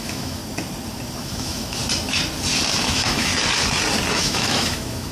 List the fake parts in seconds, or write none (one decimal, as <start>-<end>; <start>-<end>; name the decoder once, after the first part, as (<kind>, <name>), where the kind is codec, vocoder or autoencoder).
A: 0.0-0.4 (autoencoder, DAC-VAE); 1.2-1.8; 2.8-3.3; 4.1-5.1